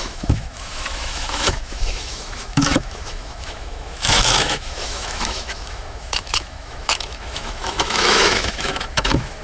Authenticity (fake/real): fake